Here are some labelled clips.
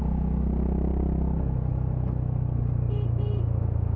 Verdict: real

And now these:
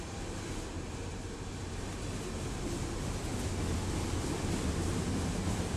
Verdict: real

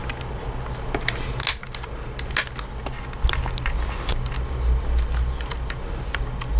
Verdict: real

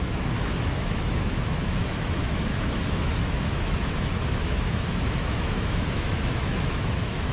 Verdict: fake